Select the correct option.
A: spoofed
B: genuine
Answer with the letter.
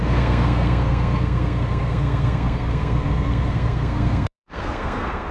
A